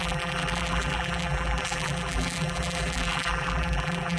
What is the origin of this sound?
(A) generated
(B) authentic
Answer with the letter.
A